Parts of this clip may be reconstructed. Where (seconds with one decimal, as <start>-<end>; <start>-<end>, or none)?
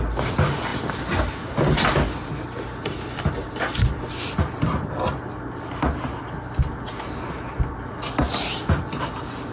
none